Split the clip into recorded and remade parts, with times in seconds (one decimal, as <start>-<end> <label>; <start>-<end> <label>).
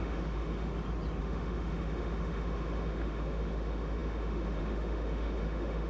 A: 0.0-0.7 remade; 0.7-1.2 recorded; 1.2-5.9 remade